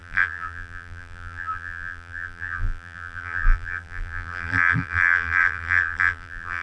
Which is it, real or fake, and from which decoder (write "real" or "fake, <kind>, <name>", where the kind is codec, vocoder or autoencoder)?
fake, vocoder, BigVGAN v2